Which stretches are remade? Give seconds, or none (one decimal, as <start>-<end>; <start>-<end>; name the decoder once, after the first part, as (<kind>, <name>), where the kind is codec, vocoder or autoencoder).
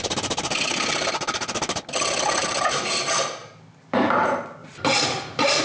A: 2.4-2.9 (vocoder, BigVGAN v2); 3.4-4.1; 4.6-5.6